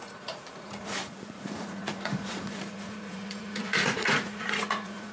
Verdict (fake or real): fake